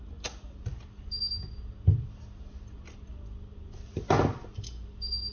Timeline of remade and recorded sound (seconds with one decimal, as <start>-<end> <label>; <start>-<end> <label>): 0.0-5.3 recorded